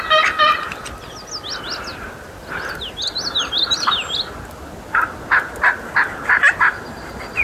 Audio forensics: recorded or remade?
recorded